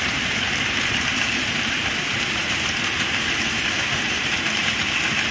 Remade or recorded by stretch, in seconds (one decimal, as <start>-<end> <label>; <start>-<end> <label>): 0.0-5.3 remade